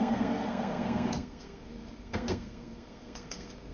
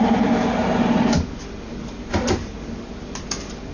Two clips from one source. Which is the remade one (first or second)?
first